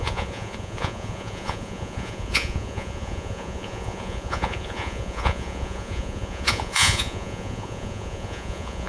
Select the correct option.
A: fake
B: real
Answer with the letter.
A